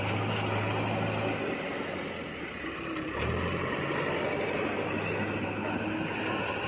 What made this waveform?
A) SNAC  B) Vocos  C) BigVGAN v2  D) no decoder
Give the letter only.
D